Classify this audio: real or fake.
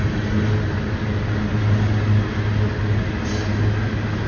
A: real